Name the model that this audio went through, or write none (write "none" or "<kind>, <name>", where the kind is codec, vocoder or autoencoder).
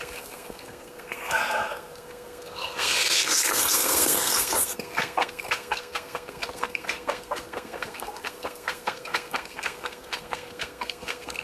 codec, SNAC